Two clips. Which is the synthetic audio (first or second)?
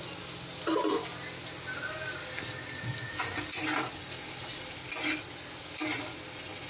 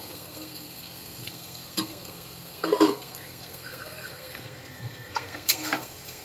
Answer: second